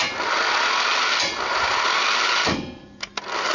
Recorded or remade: recorded